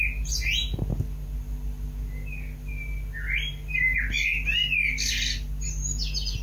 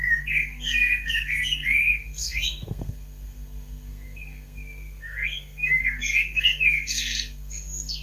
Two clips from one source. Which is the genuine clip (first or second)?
first